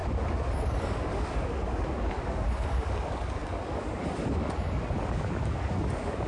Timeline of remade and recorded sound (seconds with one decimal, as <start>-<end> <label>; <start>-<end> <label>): 0.0-6.3 remade